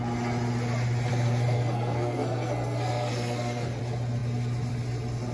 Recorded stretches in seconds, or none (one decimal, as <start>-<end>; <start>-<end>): 0.0-1.1; 3.8-5.3